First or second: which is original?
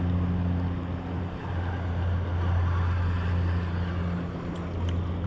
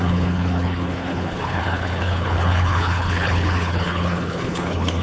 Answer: first